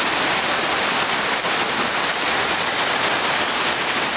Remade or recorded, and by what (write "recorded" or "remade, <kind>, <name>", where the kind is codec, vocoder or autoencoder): recorded